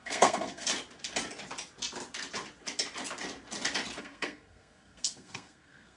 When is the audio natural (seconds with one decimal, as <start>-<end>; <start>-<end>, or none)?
0.7-4.0